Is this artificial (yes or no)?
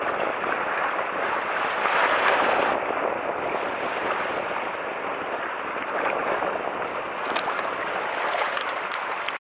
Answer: no